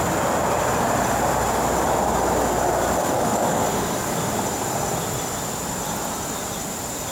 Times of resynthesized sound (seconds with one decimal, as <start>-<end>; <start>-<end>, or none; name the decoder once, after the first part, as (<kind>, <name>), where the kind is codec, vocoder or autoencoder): 3.0-4.2 (codec, DAC)